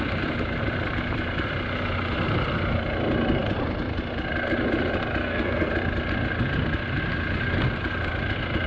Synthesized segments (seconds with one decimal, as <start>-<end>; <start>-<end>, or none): 5.2-5.7